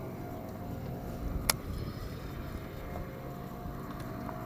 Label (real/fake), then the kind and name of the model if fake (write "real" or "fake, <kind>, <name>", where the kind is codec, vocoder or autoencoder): real